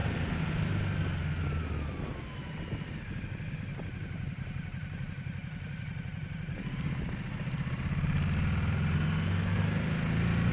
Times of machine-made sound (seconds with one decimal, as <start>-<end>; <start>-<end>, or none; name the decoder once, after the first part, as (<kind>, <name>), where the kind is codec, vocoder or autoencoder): none

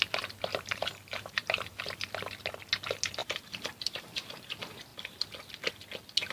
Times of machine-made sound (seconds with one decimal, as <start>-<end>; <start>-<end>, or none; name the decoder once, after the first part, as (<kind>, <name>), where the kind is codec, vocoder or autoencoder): 0.5-1.8 (vocoder, BigVGAN v2); 3.2-4.3

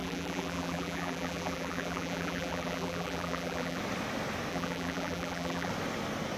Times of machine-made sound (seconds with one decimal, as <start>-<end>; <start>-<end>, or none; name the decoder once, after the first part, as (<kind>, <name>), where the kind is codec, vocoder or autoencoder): 0.0-3.8 (vocoder, BigVGAN v2); 4.5-5.7